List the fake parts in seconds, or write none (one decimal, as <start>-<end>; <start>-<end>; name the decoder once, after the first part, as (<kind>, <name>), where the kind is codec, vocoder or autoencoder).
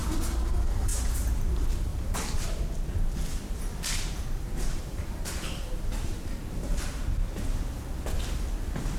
1.9-2.6 (vocoder, BigVGAN v2); 3.3-7.0